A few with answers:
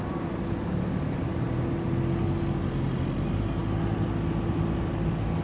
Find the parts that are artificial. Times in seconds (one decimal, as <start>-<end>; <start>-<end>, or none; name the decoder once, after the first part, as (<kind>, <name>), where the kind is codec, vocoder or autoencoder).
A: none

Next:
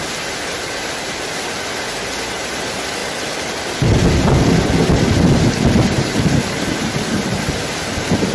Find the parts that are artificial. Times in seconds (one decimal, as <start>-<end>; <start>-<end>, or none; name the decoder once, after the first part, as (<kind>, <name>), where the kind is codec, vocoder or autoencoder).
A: none

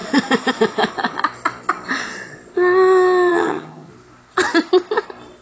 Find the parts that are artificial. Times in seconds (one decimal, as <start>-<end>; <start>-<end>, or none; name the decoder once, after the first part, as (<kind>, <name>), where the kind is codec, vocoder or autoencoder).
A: 3.3-3.9 (vocoder, HiFi-GAN)

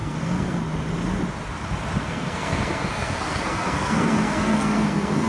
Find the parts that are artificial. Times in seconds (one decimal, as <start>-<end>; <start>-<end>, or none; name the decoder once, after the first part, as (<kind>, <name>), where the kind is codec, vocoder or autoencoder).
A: 0.0-0.6 (codec, SNAC); 2.0-5.3